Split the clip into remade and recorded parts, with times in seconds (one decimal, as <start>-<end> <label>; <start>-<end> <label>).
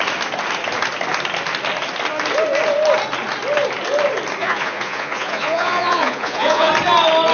0.0-4.4 recorded; 4.4-6.7 remade; 6.7-7.3 recorded